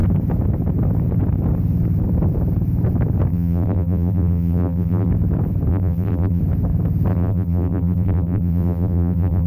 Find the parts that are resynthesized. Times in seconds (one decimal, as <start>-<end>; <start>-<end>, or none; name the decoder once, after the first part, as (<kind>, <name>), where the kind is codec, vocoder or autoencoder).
3.3-5.1 (vocoder, BigVGAN v2); 5.7-6.4; 7.1-9.5